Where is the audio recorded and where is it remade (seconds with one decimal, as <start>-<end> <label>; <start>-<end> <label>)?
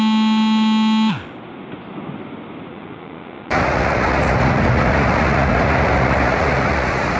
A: 0.0-2.7 recorded; 2.7-7.2 remade